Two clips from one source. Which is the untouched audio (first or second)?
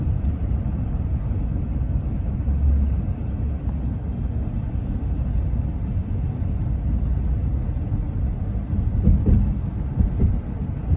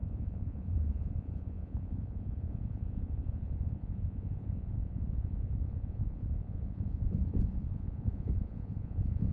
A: first